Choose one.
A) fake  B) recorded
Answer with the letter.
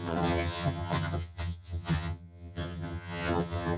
A